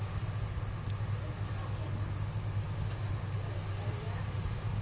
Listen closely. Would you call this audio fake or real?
real